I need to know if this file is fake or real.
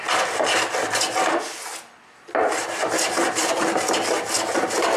real